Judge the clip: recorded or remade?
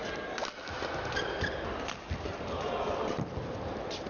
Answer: recorded